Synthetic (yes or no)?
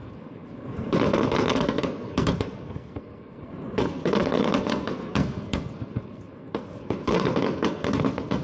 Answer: yes